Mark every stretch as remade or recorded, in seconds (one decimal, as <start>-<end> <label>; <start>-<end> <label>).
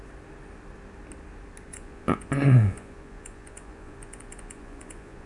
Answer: 0.0-1.7 recorded; 1.7-5.3 remade